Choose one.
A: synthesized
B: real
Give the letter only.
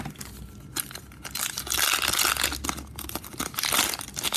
B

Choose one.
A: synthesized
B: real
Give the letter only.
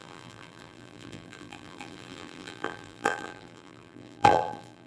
A